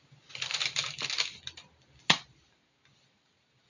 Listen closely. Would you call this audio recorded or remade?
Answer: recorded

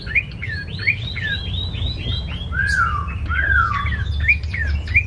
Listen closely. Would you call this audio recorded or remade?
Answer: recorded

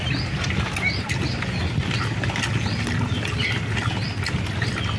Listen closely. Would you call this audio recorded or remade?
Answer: recorded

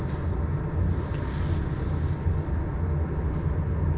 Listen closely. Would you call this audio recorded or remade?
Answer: recorded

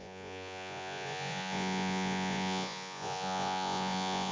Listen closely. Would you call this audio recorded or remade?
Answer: remade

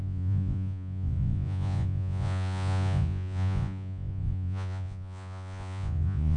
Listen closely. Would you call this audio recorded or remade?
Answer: remade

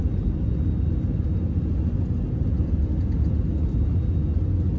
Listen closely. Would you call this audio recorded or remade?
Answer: recorded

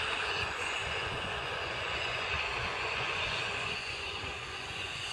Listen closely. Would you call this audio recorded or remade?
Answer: remade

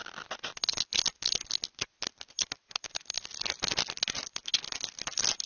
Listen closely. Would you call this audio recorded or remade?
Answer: recorded